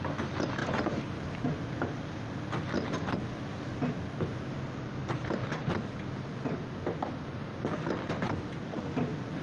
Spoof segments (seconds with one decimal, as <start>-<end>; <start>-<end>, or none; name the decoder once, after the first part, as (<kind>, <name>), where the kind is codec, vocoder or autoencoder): 0.6-1.4 (vocoder, BigVGAN v2); 4.3-5.0; 5.4-8.8